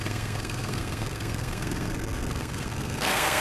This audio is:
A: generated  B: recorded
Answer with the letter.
A